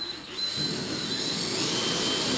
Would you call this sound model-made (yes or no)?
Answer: no